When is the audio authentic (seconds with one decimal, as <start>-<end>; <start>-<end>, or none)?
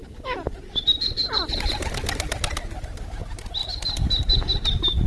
0.0-3.6; 4.2-5.1